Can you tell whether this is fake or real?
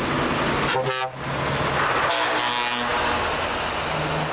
real